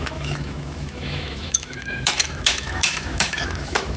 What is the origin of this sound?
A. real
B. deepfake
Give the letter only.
B